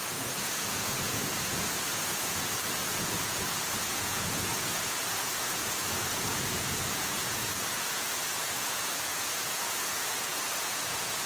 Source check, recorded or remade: remade